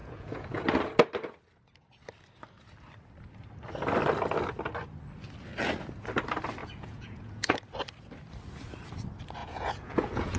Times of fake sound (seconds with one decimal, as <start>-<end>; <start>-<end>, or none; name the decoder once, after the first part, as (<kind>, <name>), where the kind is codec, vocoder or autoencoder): 0.0-0.6 (vocoder, Vocos); 6.6-7.6; 9.4-10.4